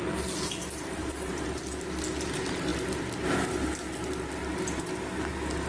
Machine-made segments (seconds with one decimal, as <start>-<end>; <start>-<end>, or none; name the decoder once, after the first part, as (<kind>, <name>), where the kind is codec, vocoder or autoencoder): 1.0-1.6 (vocoder, BigVGAN v2)